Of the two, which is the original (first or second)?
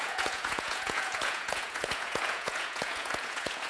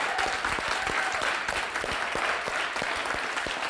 second